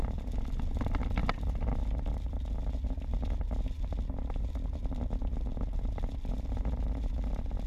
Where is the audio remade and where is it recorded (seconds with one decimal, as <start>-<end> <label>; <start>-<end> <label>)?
0.0-7.7 recorded